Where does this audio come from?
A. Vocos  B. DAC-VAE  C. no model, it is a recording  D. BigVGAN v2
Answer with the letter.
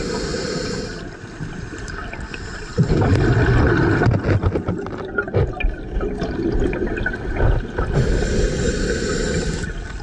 C